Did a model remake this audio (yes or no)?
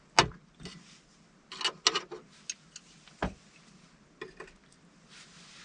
no